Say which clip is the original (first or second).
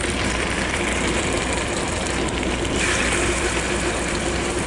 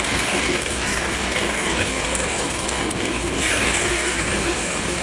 first